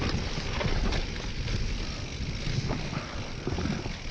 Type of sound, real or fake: real